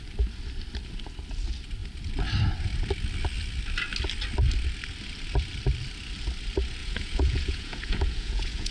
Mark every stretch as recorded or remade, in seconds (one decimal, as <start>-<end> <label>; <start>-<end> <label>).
0.0-6.8 recorded; 6.8-8.7 remade